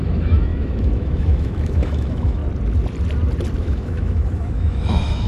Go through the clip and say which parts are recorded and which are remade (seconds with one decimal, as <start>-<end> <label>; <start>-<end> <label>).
0.0-2.4 remade; 2.4-3.6 recorded; 3.6-5.3 remade